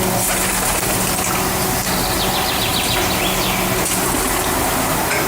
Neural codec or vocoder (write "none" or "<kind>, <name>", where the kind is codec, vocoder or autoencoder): none